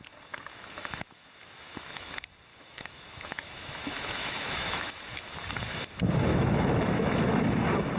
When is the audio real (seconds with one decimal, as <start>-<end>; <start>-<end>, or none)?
0.0-0.8; 2.1-2.5; 5.2-6.3; 7.5-8.0